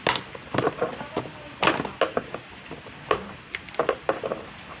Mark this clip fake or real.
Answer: real